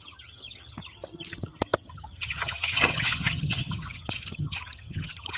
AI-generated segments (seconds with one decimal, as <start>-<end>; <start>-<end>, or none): 0.0-5.4